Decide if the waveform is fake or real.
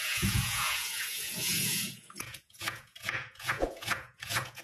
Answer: fake